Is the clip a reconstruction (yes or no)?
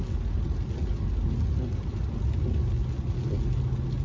no